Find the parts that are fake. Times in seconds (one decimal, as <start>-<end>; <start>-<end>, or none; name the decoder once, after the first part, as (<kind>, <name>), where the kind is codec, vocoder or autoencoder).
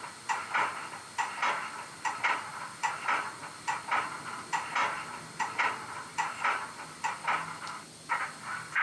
1.4-2.9 (vocoder, BigVGAN v2); 4.8-8.1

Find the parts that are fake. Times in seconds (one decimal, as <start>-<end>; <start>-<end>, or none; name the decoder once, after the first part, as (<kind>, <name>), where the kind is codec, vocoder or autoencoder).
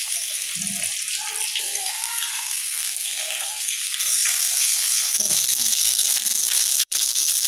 0.0-0.5 (codec, SNAC); 1.6-7.5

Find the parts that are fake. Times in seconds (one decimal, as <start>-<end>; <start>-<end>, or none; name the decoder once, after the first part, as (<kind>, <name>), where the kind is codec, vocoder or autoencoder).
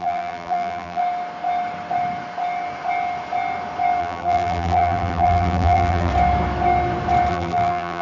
0.0-1.0 (vocoder, BigVGAN v2); 4.0-6.1; 7.3-8.0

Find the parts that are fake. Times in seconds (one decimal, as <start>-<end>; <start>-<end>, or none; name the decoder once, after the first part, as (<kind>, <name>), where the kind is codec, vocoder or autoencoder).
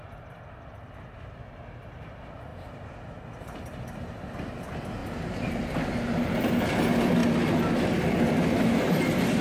none